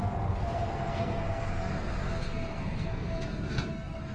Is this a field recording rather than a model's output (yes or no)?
no